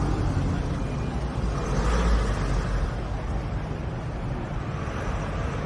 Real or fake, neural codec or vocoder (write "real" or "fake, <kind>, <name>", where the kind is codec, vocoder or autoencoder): real